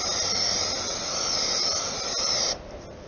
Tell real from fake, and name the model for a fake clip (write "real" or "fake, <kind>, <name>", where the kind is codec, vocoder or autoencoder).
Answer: real